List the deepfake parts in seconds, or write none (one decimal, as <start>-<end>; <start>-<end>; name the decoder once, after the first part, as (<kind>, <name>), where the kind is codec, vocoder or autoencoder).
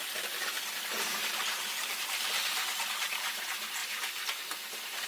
none